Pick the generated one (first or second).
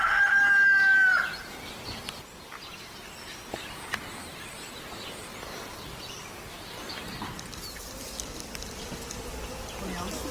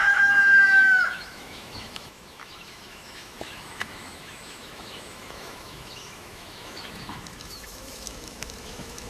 second